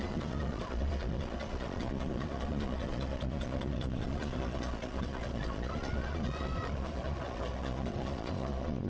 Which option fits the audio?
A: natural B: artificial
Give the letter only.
B